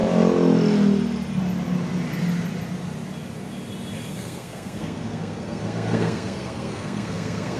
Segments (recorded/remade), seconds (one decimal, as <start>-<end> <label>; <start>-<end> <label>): 0.0-4.1 recorded; 4.1-7.6 remade